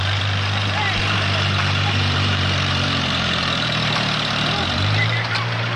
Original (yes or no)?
no